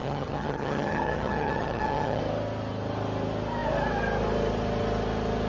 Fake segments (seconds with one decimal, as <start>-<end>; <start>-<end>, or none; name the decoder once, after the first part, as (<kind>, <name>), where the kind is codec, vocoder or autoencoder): 0.0-2.2 (vocoder, HiFi-GAN)